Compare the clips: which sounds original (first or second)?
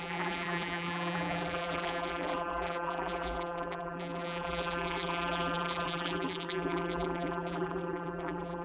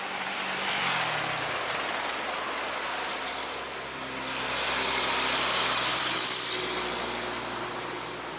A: second